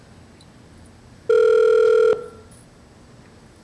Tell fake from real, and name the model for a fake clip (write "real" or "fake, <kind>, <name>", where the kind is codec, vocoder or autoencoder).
real